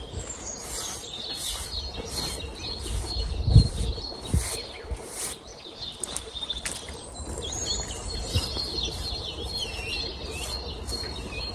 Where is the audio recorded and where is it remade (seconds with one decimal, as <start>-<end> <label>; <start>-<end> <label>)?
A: 0.0-5.5 recorded; 5.5-6.2 remade; 6.2-11.5 recorded